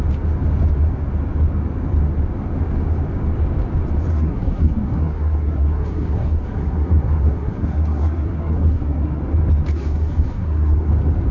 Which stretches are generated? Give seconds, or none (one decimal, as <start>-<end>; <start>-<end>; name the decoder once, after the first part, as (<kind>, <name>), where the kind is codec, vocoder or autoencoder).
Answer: 4.1-9.2 (codec, SNAC); 9.7-10.9